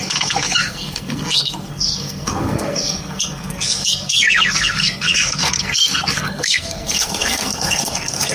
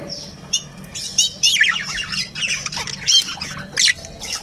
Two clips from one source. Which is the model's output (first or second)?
first